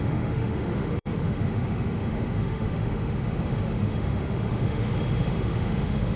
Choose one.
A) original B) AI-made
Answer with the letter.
B